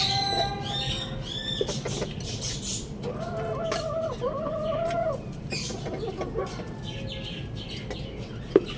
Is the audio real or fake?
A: real